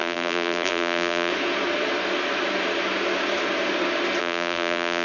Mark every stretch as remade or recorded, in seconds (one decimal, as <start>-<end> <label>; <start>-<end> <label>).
0.0-1.3 remade; 1.3-4.2 recorded; 4.2-5.0 remade